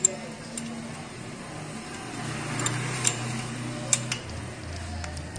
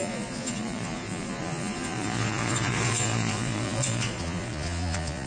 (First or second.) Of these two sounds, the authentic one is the first